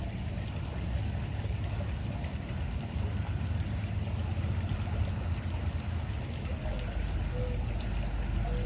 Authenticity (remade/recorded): recorded